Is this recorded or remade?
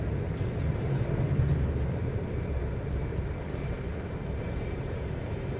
remade